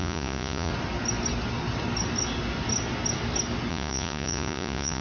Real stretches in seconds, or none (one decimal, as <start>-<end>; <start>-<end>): 0.7-3.7